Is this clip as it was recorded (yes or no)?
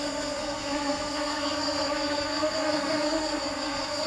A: no